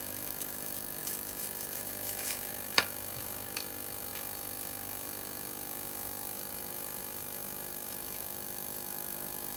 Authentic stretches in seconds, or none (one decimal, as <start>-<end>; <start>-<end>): none